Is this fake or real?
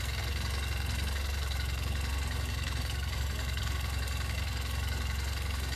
fake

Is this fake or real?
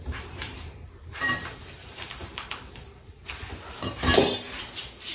fake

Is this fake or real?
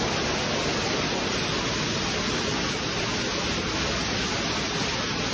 real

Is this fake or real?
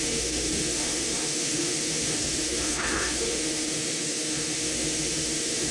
fake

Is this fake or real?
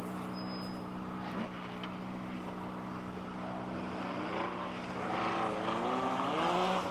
real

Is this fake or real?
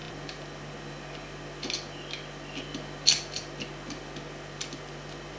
real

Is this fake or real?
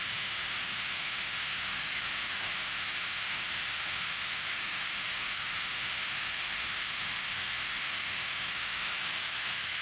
fake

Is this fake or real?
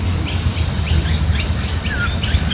real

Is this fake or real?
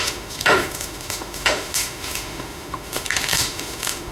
fake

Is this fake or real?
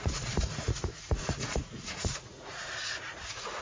fake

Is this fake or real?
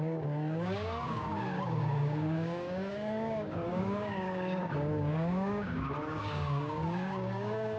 fake